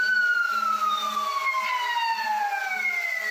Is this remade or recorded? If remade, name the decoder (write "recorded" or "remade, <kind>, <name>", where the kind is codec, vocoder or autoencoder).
recorded